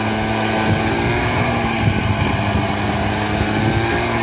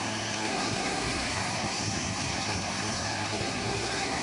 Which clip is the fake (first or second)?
second